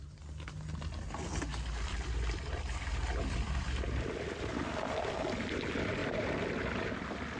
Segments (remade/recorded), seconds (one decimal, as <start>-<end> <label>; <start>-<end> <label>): 0.0-1.5 recorded; 1.5-5.1 remade; 5.1-7.4 recorded